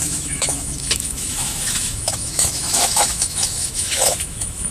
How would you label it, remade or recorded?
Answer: remade